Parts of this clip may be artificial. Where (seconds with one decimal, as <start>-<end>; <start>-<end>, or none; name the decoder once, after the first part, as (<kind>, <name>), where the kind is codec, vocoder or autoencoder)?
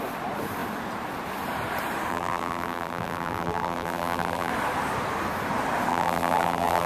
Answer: 2.1-4.5 (vocoder, BigVGAN v2); 5.9-6.9